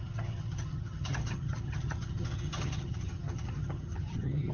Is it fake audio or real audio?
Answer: fake